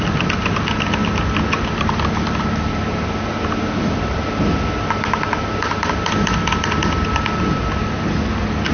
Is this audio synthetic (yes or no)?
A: no